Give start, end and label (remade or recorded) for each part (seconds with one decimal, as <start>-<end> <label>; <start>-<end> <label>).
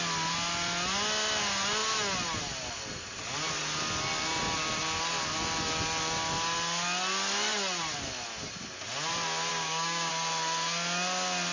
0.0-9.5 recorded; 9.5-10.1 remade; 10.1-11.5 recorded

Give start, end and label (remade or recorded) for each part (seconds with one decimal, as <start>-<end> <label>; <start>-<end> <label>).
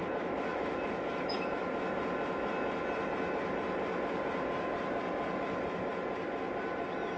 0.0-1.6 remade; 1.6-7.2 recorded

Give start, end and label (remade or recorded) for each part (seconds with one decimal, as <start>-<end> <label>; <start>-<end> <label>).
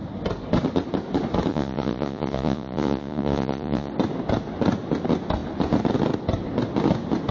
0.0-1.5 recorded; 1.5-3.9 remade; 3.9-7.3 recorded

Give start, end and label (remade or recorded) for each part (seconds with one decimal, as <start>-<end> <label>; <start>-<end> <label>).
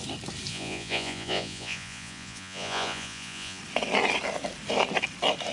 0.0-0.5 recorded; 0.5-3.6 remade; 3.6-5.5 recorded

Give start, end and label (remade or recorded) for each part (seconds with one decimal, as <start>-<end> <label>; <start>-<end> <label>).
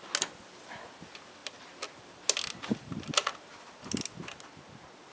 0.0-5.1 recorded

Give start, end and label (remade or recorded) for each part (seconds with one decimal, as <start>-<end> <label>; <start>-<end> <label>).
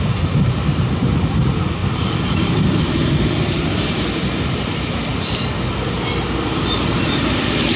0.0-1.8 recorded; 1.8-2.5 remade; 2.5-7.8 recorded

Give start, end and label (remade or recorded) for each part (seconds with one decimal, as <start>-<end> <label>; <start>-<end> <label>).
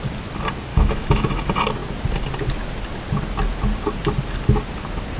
0.0-0.7 recorded; 0.7-1.3 remade; 1.3-5.2 recorded